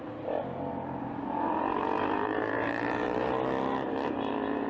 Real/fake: fake